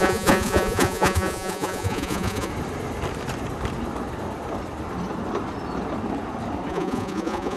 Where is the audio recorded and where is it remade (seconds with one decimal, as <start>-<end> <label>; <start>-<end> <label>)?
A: 0.0-2.5 remade; 2.5-6.7 recorded; 6.7-7.6 remade